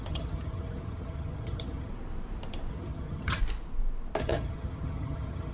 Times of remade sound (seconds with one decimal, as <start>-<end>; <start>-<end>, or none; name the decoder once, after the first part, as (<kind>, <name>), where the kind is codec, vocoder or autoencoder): 0.0-1.9 (vocoder, HiFi-GAN); 2.7-3.4; 4.2-5.5